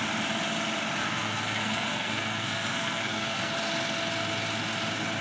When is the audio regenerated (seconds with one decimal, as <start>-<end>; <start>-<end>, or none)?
1.0-3.5